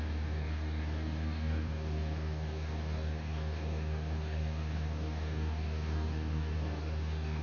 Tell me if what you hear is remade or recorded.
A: remade